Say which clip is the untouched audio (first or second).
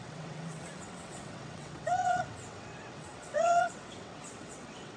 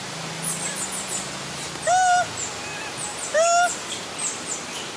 second